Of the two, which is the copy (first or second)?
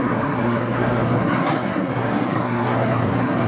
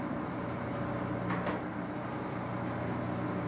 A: first